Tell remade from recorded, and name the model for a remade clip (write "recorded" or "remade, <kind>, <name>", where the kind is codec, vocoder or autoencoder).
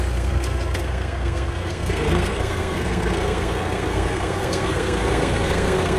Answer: remade, codec, SNAC